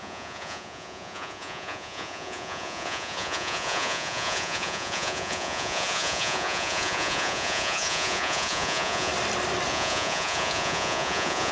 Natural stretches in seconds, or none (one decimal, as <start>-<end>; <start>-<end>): 9.1-9.7